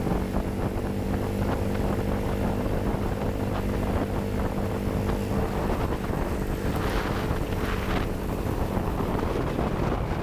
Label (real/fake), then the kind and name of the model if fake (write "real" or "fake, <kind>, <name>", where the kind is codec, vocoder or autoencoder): real